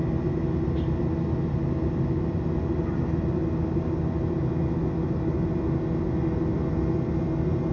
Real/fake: real